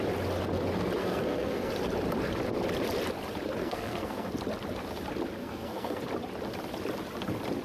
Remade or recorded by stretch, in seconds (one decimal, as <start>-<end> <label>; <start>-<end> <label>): 0.0-1.0 recorded; 1.0-1.7 remade; 1.7-3.6 recorded; 3.6-4.3 remade; 4.3-5.4 recorded; 5.4-6.0 remade; 6.0-7.6 recorded